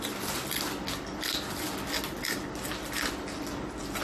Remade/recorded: recorded